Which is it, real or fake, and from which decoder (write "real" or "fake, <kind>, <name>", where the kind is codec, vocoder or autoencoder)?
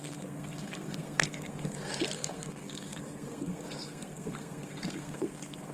fake, codec, SNAC